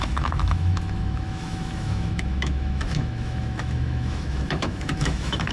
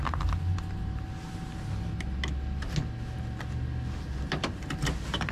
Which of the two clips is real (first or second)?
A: second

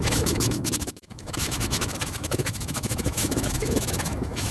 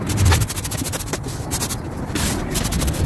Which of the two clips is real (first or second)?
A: second